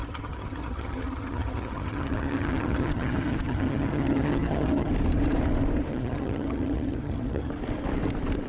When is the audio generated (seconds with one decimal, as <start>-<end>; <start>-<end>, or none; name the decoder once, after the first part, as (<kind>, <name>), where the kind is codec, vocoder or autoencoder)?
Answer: 0.0-4.9 (vocoder, HiFi-GAN); 5.9-7.5